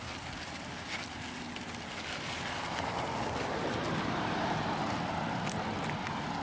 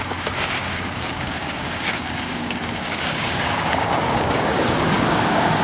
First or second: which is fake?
second